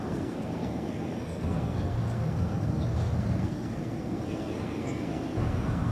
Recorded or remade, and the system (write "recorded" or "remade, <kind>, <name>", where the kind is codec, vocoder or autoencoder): remade, codec, SNAC